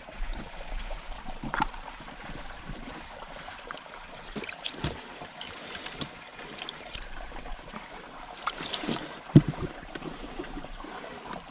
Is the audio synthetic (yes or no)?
yes